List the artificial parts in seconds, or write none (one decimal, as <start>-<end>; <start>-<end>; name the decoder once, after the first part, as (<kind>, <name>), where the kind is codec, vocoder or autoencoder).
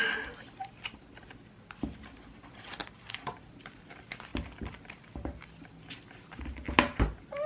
2.8-3.8 (vocoder, BigVGAN v2); 4.3-6.7